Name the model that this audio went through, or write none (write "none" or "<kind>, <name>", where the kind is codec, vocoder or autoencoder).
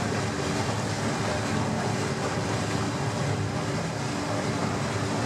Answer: none